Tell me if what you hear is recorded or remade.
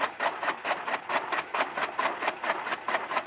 recorded